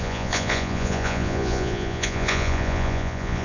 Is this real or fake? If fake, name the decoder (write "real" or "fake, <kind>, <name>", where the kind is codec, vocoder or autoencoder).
fake, vocoder, Vocos